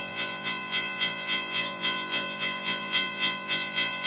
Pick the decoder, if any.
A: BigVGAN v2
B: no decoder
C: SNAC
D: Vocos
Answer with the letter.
D